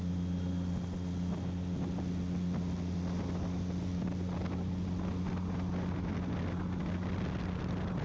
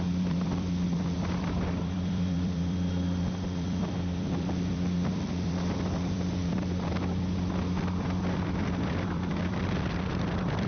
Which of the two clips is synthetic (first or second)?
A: second